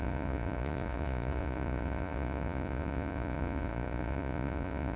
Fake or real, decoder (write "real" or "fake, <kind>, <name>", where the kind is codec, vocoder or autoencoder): fake, vocoder, Vocos